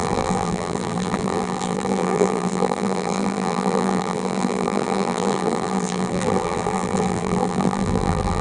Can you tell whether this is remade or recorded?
remade